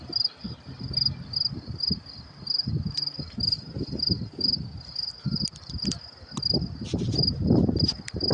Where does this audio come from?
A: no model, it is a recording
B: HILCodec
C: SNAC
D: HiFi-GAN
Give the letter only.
A